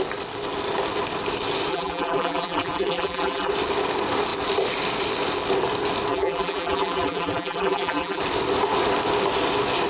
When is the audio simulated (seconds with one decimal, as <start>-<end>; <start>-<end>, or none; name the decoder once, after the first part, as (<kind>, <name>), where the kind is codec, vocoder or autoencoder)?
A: 1.7-3.5 (vocoder, BigVGAN v2); 6.1-8.2